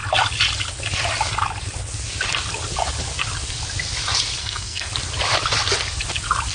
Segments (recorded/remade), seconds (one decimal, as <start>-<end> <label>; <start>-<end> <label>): 0.0-4.4 recorded; 4.4-4.9 remade; 4.9-6.5 recorded